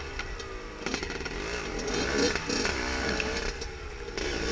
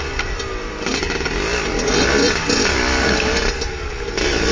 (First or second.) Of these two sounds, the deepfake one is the first